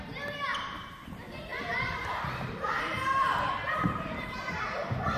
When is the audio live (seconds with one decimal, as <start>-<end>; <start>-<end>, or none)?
0.0-0.5; 1.1-1.5; 4.6-5.2